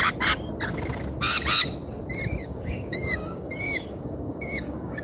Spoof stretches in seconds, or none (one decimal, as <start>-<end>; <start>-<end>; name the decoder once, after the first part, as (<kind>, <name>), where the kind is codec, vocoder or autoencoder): 2.4-5.0 (codec, DAC)